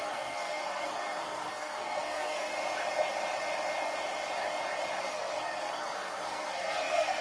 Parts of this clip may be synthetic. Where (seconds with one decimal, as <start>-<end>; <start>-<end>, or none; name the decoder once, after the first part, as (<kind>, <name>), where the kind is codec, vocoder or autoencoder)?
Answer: 0.0-2.5 (codec, SNAC); 5.0-7.2